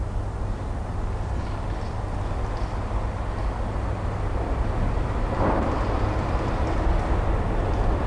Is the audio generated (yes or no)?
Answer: no